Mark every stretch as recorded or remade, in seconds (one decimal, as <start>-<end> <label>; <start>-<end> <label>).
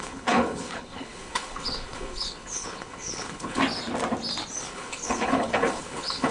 0.0-3.6 remade; 3.6-4.6 recorded; 4.6-6.3 remade